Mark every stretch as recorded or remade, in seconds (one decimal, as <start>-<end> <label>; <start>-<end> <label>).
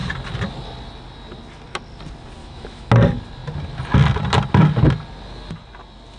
0.0-2.4 recorded; 2.4-2.9 remade; 2.9-6.2 recorded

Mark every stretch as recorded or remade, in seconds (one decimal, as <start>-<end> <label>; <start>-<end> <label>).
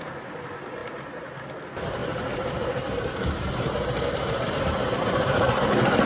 0.0-2.0 recorded; 2.0-6.1 remade